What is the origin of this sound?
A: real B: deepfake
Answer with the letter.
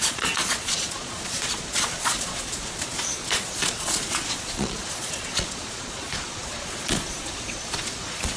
B